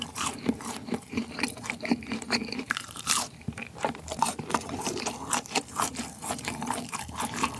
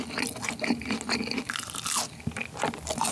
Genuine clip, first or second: second